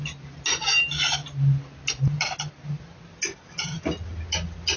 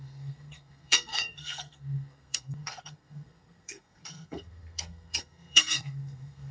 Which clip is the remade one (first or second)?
second